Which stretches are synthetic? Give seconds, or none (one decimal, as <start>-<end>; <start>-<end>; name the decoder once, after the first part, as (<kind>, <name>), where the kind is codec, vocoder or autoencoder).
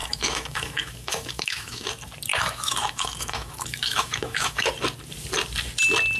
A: 0.0-1.9 (autoencoder, DAC-VAE); 2.3-4.7